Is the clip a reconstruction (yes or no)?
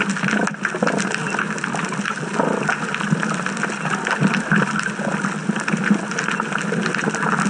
no